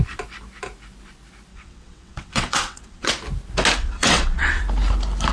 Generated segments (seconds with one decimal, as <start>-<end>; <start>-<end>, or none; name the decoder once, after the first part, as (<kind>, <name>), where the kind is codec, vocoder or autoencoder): 1.5-3.1 (vocoder, WaveNeXt); 3.8-4.6